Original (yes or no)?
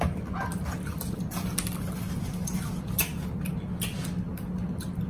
yes